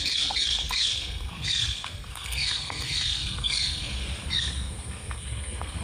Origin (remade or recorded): remade